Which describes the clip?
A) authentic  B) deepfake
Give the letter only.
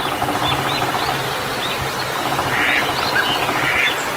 A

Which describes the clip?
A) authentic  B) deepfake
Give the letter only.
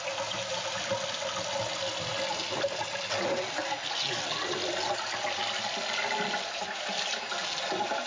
A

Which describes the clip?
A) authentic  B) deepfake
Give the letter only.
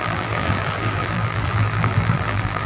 B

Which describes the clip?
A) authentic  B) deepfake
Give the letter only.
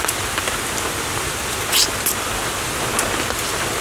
A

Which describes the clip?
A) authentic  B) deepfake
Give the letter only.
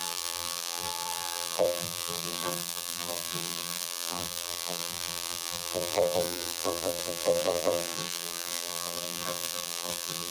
B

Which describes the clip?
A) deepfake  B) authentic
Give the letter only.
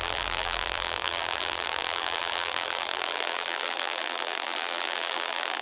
A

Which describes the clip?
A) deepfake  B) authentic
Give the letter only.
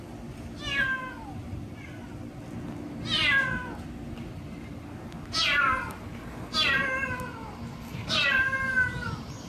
B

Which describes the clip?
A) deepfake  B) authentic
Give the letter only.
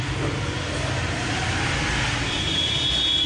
B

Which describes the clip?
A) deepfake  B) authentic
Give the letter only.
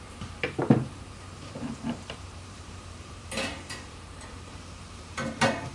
A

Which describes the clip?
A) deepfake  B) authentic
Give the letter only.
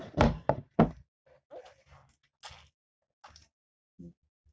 B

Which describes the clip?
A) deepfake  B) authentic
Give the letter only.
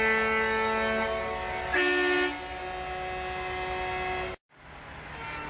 B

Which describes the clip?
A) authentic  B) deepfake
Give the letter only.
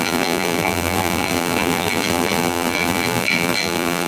B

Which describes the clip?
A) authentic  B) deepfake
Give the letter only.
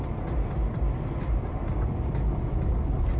A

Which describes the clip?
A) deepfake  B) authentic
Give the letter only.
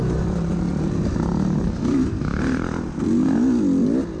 B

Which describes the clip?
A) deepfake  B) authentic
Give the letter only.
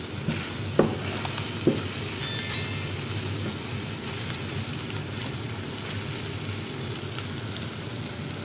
B